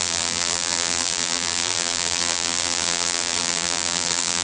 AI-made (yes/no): yes